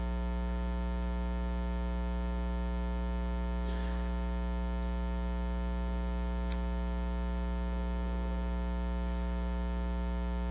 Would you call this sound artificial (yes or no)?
no